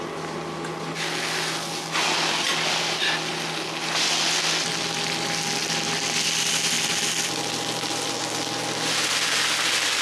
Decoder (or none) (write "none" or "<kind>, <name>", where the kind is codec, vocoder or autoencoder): none